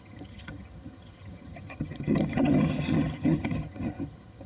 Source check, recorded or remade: remade